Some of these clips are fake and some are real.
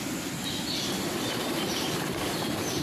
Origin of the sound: fake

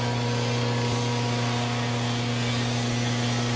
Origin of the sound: real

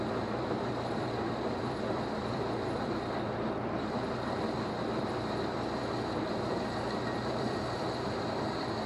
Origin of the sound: fake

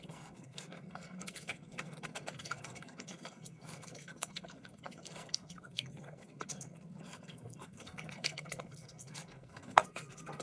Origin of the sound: fake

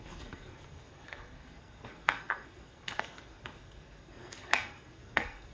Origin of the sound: fake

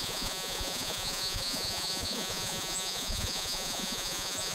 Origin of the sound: fake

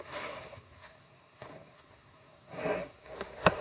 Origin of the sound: fake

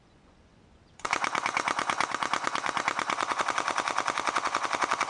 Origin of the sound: fake